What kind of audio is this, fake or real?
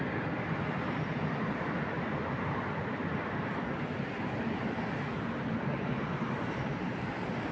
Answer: real